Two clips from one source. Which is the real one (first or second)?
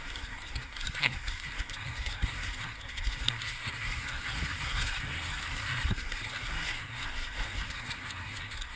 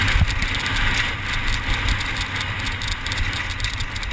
second